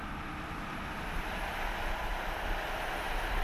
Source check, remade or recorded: recorded